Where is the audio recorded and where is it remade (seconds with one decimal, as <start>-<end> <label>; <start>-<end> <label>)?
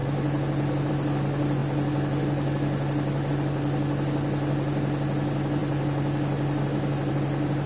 0.0-7.7 recorded